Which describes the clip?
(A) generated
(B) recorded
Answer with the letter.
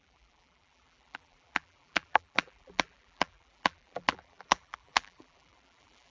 A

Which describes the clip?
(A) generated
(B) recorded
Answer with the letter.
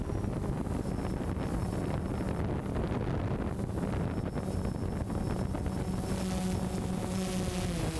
B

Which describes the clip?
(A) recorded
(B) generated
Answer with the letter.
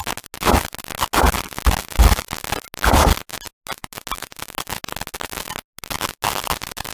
A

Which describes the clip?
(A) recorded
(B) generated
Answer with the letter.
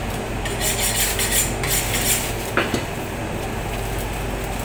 A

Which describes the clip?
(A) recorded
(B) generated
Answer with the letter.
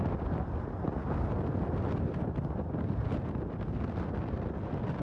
A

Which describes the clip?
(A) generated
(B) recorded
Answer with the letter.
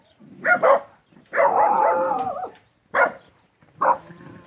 A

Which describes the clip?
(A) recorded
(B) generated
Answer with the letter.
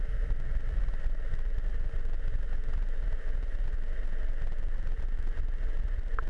B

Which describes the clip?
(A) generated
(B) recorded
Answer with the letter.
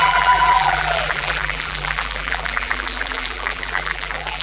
A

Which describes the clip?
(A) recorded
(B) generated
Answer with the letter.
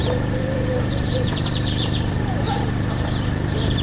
B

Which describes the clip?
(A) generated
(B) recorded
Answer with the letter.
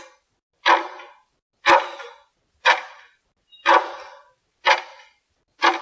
B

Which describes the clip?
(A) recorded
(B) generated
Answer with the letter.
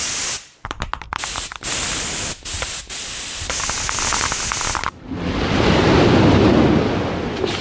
A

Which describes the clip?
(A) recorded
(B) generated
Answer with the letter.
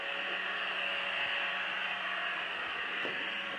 A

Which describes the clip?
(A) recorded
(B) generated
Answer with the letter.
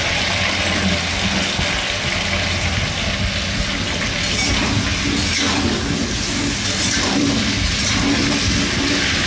A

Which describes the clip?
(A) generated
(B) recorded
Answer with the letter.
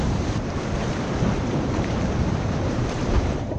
A